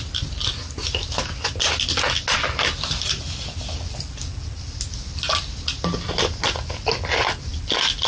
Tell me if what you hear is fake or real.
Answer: real